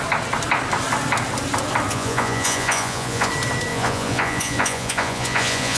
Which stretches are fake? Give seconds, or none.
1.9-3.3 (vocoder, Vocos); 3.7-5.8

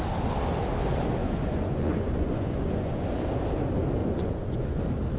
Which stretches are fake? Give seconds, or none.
1.2-3.3 (vocoder, Vocos); 4.0-4.8